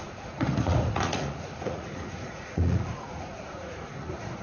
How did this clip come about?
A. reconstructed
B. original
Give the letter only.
A